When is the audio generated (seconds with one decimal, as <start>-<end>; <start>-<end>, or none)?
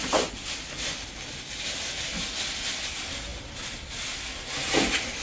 none